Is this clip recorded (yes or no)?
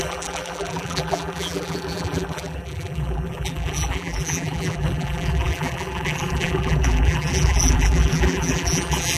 no